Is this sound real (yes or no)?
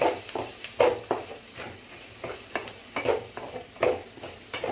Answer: yes